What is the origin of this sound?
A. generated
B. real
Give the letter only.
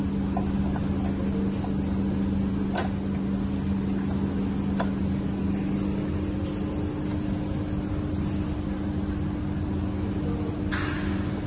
B